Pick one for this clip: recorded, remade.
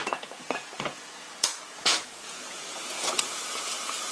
remade